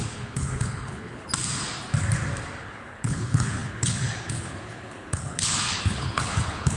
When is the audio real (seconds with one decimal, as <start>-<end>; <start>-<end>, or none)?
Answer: 1.3-2.6